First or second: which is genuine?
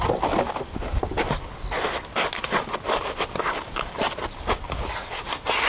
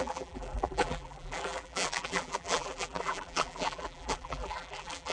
first